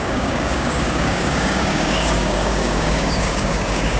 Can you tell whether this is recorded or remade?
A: remade